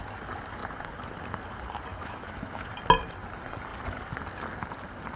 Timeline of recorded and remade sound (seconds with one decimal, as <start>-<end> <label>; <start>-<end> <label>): 0.0-1.9 recorded; 1.9-2.7 remade; 2.7-5.2 recorded